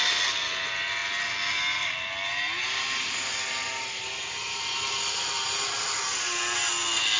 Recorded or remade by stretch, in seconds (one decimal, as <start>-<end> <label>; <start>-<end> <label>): 0.0-7.2 recorded